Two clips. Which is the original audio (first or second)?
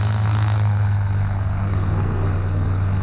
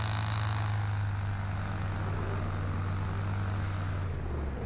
second